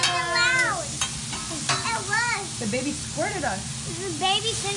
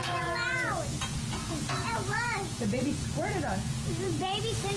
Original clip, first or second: first